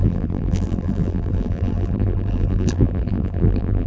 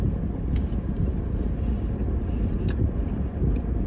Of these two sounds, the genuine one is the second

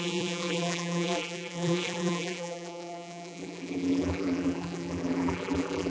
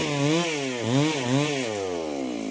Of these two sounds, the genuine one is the second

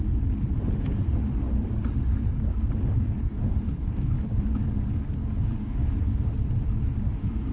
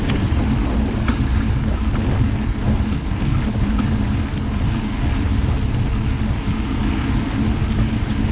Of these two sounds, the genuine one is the second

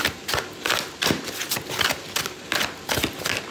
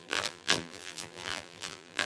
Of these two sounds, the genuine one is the first